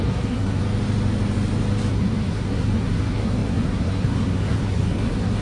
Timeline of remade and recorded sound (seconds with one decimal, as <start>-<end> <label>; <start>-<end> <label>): 0.0-0.6 remade; 0.6-1.9 recorded; 1.9-5.4 remade